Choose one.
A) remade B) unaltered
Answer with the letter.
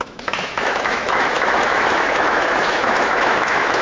A